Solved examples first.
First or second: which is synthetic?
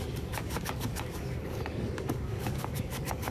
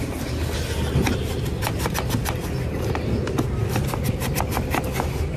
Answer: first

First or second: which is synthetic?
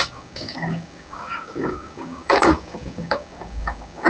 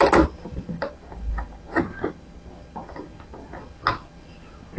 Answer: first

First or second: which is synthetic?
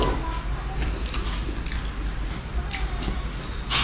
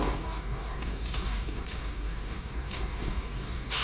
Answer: second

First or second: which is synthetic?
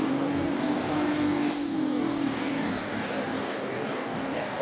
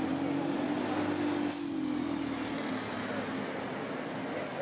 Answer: first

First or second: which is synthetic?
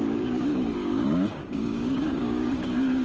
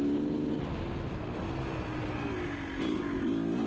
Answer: first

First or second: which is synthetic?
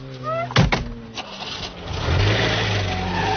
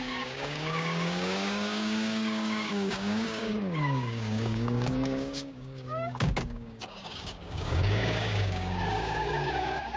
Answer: second